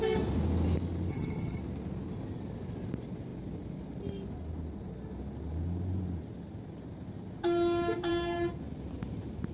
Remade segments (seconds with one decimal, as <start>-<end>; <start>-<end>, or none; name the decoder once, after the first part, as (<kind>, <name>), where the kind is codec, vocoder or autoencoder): 1.1-1.6 (vocoder, HiFi-GAN)